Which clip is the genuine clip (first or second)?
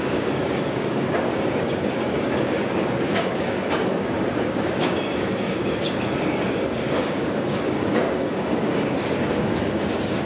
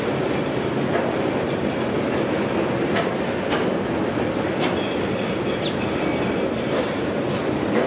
second